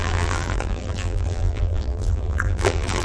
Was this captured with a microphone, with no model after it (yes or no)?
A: no